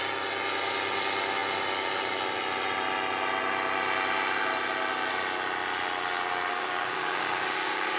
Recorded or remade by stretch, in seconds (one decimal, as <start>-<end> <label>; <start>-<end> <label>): 0.0-6.5 recorded; 6.5-8.0 remade